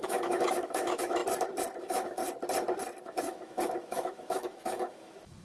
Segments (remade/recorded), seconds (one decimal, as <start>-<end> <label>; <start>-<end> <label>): 0.0-1.2 remade; 1.2-1.8 recorded; 1.8-2.2 remade; 2.2-3.0 recorded; 3.0-5.4 remade